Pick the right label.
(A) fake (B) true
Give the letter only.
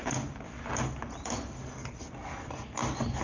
B